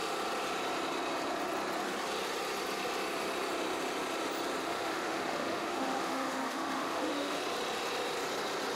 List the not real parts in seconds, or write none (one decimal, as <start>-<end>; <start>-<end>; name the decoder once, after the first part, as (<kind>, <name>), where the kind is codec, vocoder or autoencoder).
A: 4.6-7.4 (autoencoder, DAC-VAE)